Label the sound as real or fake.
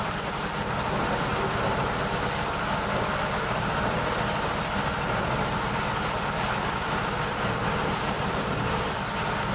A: real